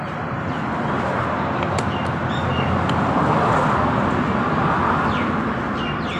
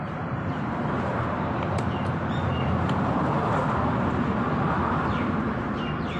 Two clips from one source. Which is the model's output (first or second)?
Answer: second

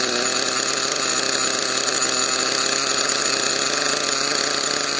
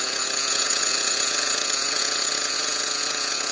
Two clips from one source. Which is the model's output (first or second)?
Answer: second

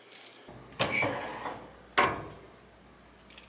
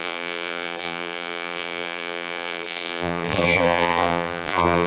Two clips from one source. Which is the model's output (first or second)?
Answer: second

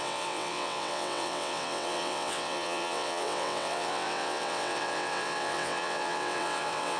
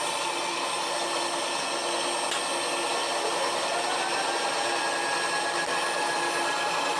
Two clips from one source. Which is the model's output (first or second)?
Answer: first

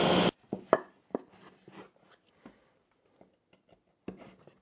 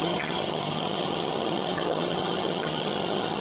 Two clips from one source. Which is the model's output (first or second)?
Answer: second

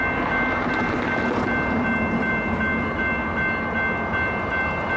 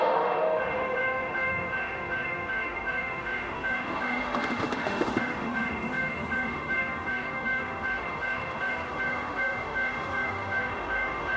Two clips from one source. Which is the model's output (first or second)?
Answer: second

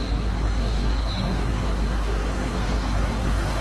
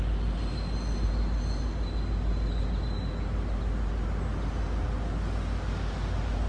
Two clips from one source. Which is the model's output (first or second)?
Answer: first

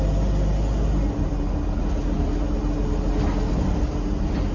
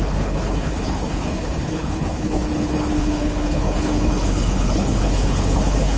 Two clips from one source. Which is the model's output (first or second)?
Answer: second